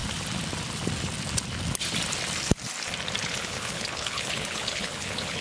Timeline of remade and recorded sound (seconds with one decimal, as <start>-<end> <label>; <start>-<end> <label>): 0.0-3.2 recorded; 3.2-5.4 remade